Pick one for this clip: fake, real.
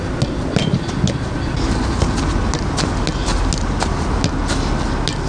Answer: real